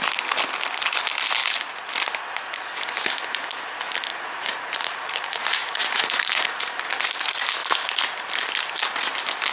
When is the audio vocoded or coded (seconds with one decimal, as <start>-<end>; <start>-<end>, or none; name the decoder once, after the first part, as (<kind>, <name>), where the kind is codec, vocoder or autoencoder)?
1.4-1.9 (vocoder, Vocos); 4.1-6.6